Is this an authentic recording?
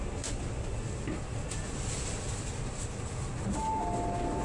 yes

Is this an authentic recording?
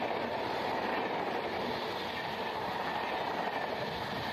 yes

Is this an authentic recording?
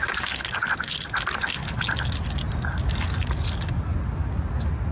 yes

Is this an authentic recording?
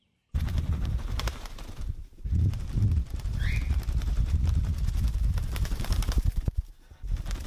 no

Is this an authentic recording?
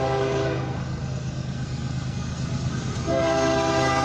no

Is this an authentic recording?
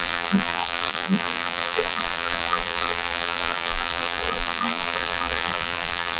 no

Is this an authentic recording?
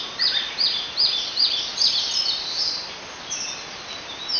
yes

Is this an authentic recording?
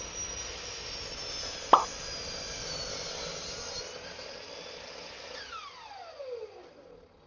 yes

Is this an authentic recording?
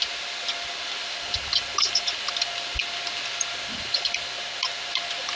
yes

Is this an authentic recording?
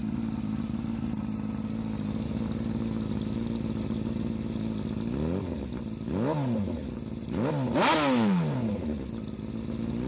yes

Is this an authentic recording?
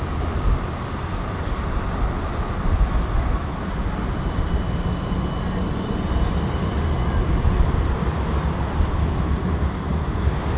yes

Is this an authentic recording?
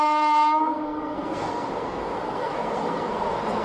no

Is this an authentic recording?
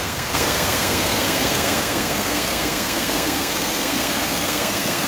no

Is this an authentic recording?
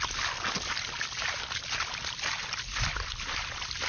yes